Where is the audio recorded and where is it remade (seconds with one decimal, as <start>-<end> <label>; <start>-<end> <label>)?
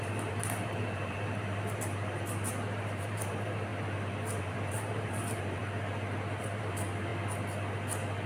0.0-3.7 remade; 3.7-4.4 recorded; 4.4-5.6 remade; 5.6-6.4 recorded; 6.4-7.1 remade; 7.1-8.3 recorded